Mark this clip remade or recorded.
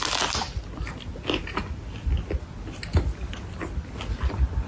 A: recorded